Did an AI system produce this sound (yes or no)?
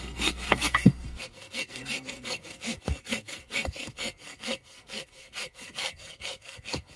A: yes